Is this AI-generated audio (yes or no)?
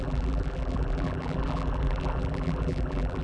yes